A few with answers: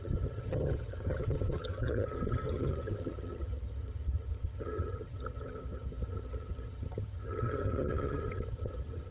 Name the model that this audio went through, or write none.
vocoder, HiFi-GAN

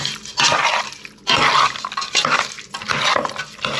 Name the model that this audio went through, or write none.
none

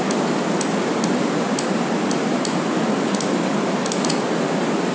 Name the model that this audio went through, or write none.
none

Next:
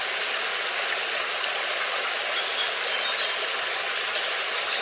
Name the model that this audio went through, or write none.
none